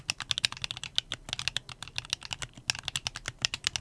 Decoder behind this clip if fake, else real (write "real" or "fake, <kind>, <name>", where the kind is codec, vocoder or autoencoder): real